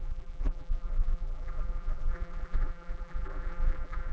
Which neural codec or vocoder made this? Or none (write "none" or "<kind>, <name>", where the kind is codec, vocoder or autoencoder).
vocoder, BigVGAN v2